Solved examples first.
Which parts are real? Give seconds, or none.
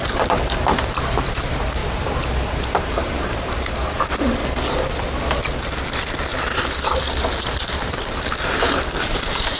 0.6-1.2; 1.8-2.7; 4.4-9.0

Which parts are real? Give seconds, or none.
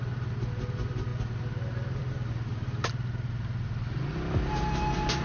0.0-5.2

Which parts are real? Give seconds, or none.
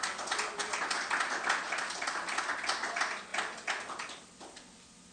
0.0-5.1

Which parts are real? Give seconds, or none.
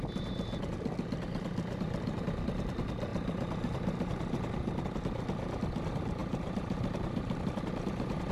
0.0-3.1; 4.8-6.2